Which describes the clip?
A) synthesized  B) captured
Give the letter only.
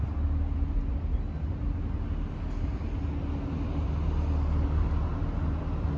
B